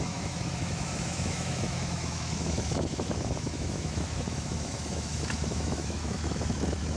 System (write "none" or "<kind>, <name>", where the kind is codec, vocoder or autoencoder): autoencoder, DAC-VAE